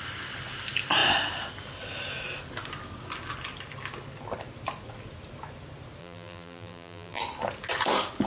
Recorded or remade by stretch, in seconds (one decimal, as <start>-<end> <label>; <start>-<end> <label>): 0.0-6.0 recorded; 6.0-7.2 remade; 7.2-8.3 recorded

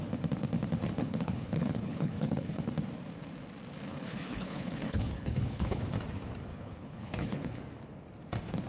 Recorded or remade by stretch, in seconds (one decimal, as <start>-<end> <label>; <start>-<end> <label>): 0.0-1.0 recorded; 1.0-2.6 remade; 2.6-3.9 recorded; 3.9-5.8 remade; 5.8-6.5 recorded; 6.5-7.6 remade; 7.6-8.7 recorded

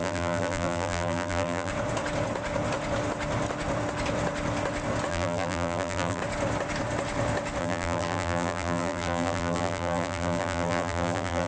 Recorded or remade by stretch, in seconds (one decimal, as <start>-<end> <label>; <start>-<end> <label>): 0.0-1.7 remade; 1.7-5.1 recorded; 5.1-6.2 remade; 6.2-7.6 recorded; 7.6-11.5 remade